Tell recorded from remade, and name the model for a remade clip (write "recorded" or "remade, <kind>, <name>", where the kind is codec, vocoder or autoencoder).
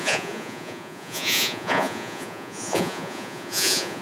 remade, vocoder, Vocos